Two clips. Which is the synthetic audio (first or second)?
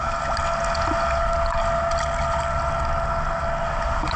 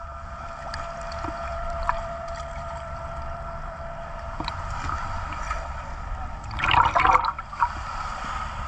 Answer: second